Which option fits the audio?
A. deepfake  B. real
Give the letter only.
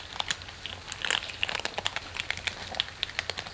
B